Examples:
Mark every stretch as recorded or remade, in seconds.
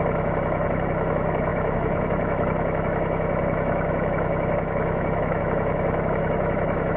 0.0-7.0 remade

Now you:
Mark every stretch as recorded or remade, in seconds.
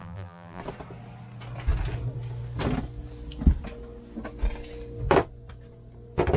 0.0-0.6 remade; 0.6-6.4 recorded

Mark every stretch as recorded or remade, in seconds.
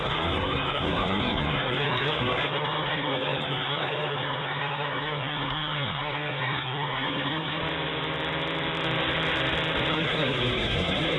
0.0-7.6 remade; 7.6-9.9 recorded; 9.9-11.2 remade